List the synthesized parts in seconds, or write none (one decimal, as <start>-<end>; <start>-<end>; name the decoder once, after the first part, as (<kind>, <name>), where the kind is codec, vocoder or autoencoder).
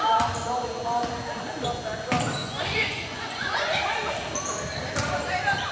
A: 2.4-3.7 (vocoder, Vocos)